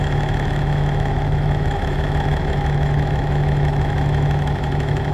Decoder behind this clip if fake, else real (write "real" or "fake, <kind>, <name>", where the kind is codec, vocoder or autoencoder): fake, autoencoder, DAC-VAE